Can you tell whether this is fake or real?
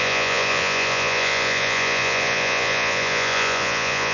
fake